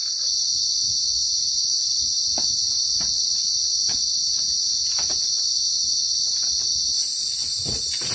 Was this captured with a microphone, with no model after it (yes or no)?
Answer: yes